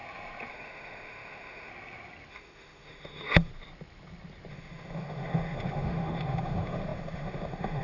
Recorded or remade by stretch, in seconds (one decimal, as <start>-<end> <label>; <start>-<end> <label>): 0.0-0.5 recorded; 0.5-1.7 remade; 1.7-2.3 recorded; 2.3-3.5 remade; 3.5-4.5 recorded; 4.5-7.8 remade